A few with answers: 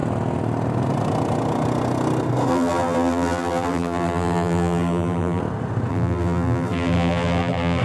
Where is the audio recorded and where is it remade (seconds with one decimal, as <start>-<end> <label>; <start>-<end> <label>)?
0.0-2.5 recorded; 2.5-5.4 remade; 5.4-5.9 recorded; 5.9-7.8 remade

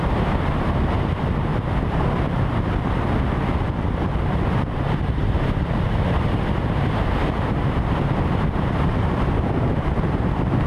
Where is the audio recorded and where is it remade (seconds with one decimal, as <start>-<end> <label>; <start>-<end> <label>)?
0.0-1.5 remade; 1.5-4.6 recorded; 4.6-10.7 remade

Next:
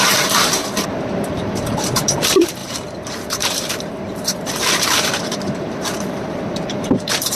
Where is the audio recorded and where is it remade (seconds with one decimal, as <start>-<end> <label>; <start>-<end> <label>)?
0.0-0.6 remade; 0.6-1.1 recorded; 1.1-7.4 remade

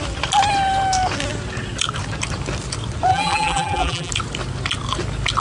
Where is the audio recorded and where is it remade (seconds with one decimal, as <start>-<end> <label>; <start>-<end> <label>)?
0.0-3.1 recorded; 3.1-4.1 remade; 4.1-5.4 recorded

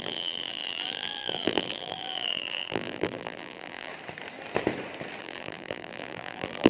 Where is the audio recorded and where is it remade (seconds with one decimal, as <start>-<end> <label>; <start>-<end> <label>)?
0.0-3.9 remade; 3.9-5.2 recorded; 5.2-6.7 remade